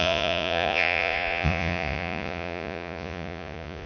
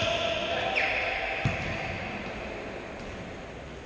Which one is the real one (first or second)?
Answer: second